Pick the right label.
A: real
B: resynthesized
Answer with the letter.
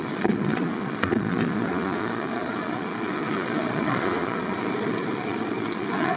B